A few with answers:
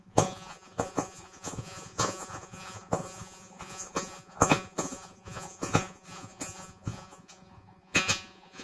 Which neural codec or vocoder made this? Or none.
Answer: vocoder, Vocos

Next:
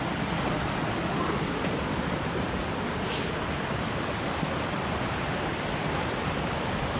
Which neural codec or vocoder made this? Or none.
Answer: none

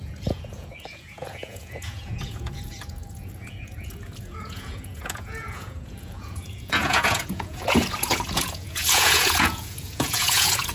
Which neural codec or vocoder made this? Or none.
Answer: vocoder, Vocos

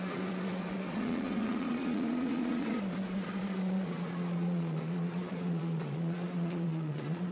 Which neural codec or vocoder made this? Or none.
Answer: vocoder, Vocos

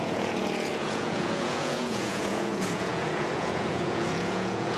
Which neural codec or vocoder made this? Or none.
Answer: vocoder, Vocos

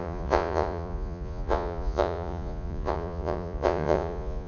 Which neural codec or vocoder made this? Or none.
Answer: vocoder, Vocos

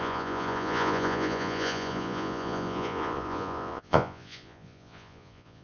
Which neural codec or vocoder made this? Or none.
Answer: vocoder, Vocos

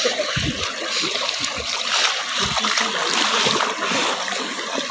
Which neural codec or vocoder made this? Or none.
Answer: none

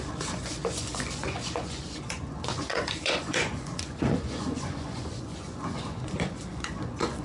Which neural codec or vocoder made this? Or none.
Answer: vocoder, Vocos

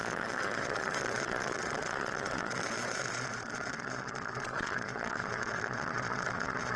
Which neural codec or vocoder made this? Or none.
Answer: vocoder, Vocos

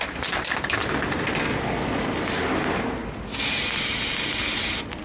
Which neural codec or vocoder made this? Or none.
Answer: none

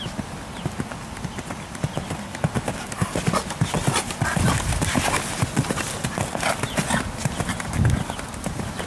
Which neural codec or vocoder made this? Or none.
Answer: none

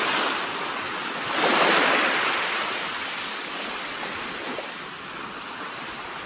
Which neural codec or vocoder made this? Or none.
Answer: none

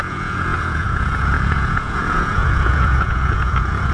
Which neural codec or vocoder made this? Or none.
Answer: vocoder, Vocos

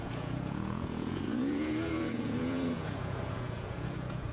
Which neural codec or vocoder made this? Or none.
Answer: vocoder, Vocos